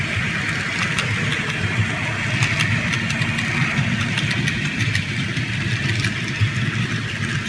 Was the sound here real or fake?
real